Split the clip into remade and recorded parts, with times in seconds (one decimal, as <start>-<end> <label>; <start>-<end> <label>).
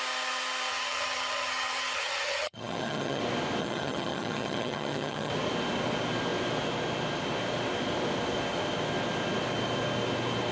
0.0-0.7 recorded; 0.7-3.2 remade; 3.2-3.6 recorded; 3.6-5.3 remade; 5.3-10.5 recorded